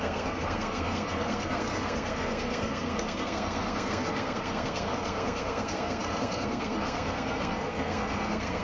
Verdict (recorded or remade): remade